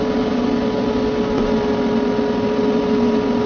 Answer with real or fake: real